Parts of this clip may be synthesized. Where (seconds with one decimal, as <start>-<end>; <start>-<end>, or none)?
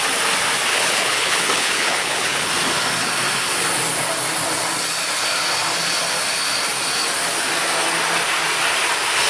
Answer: 0.7-2.5